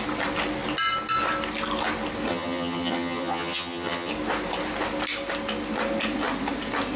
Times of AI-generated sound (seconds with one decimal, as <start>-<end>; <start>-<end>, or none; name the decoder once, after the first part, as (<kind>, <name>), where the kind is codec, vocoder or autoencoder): 2.3-4.1 (vocoder, HiFi-GAN)